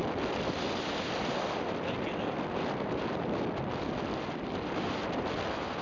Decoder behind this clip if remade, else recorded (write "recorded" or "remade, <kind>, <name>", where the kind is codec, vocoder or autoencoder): remade, vocoder, BigVGAN v2